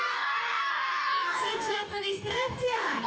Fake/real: fake